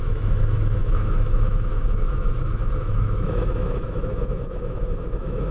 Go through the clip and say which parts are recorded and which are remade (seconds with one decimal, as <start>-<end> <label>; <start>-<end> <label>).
0.0-5.5 remade